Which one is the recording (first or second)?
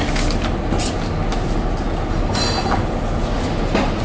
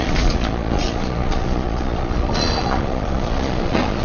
first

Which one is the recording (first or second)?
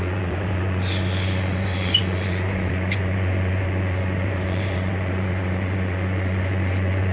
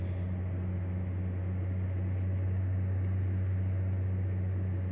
second